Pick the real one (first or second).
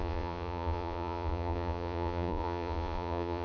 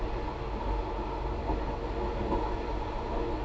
second